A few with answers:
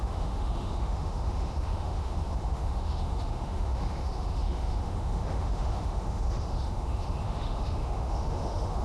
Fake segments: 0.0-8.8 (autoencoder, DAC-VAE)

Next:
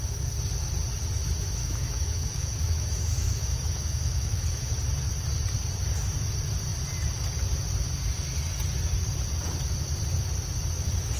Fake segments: 1.6-4.7 (autoencoder, DAC-VAE)

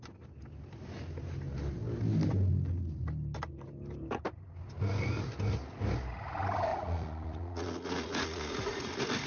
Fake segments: 6.7-8.9 (vocoder, Vocos)

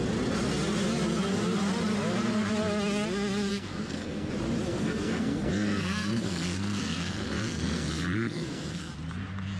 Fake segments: 3.5-4.3 (codec, SNAC); 4.7-8.9

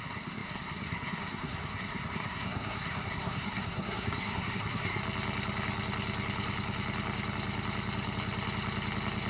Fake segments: 0.0-5.0 (codec, SNAC)